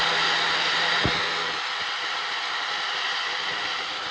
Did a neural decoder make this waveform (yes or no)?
no